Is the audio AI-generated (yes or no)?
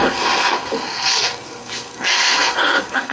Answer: yes